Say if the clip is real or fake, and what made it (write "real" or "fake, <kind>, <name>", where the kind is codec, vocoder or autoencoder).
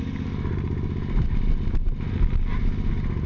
real